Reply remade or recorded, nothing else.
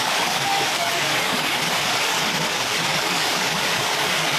remade